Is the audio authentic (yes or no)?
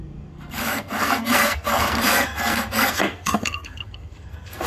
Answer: no